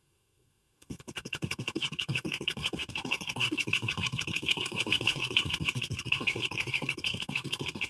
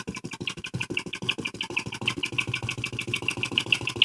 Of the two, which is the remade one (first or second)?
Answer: first